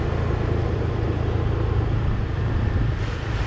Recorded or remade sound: recorded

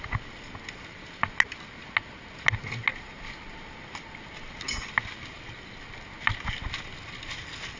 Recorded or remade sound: recorded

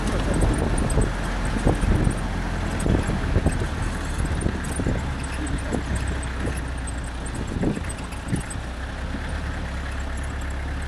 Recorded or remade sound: recorded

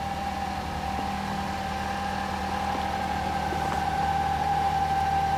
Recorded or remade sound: recorded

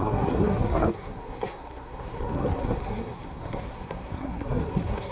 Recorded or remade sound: remade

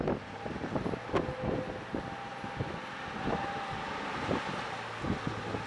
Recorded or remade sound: recorded